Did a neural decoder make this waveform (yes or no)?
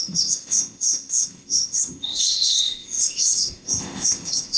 yes